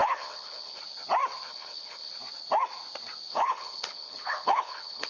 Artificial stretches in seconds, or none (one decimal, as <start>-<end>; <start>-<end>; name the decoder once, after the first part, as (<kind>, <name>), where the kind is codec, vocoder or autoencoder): 0.0-0.8 (codec, HILCodec); 1.5-2.1; 3.3-5.1